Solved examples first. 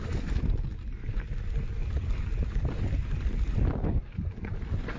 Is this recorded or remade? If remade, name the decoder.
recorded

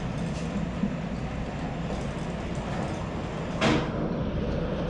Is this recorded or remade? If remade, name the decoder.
recorded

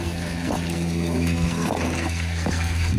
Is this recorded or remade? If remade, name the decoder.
remade, codec, SNAC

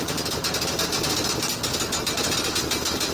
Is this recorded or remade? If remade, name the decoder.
recorded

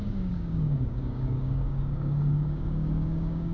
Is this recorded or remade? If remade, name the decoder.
remade, codec, DAC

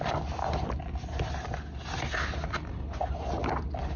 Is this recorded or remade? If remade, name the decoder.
recorded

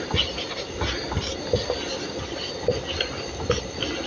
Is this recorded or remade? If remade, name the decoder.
recorded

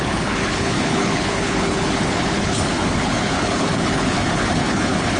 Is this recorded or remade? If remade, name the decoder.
remade, codec, HILCodec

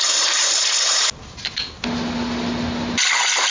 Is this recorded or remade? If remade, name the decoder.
recorded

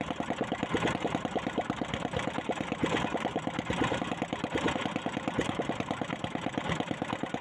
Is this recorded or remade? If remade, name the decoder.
recorded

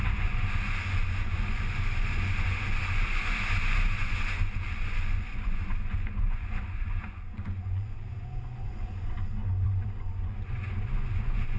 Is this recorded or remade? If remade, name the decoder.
remade, vocoder, Vocos